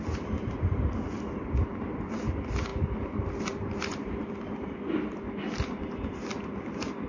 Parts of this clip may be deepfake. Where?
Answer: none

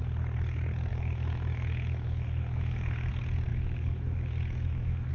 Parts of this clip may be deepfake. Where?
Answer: 0.9-3.1 (autoencoder, DAC-VAE); 3.5-5.1